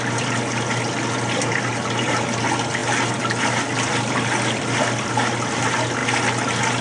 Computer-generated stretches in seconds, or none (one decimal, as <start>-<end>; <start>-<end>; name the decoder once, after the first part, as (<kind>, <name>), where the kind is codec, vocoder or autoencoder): none